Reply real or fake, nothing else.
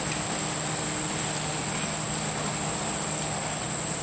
real